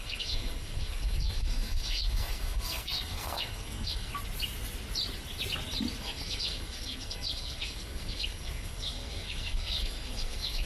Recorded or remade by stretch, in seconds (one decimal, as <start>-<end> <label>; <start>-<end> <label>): 0.0-4.1 remade; 4.1-6.0 recorded; 6.0-10.7 remade